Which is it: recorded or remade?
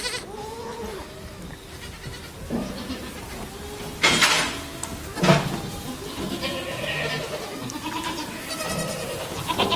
recorded